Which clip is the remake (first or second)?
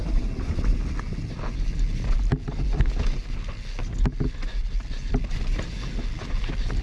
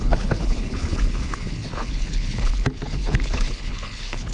second